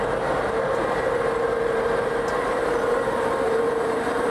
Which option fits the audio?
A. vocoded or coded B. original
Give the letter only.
A